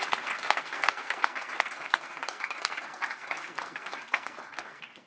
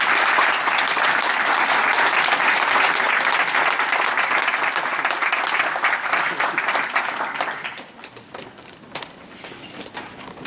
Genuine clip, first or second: second